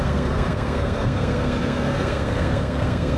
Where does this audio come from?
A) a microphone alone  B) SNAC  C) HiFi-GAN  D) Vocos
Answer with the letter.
B